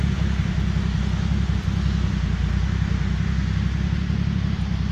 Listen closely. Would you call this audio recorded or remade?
recorded